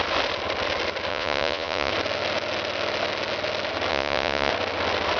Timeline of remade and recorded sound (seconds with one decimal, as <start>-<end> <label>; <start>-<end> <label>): 0.0-1.1 recorded; 1.1-1.9 remade; 1.9-3.9 recorded; 3.9-4.5 remade; 4.5-5.2 recorded